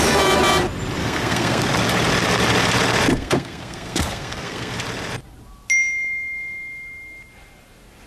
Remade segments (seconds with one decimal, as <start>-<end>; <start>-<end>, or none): 1.0-1.6; 3.1-4.7